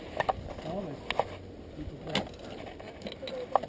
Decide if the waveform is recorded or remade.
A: recorded